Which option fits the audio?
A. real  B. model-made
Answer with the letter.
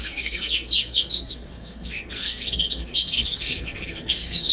B